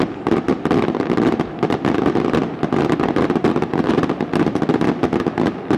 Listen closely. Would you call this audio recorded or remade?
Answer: recorded